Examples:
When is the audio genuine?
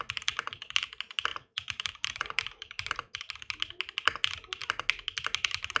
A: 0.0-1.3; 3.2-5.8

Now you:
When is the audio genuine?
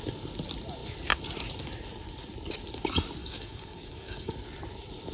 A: 0.0-3.2; 4.3-5.1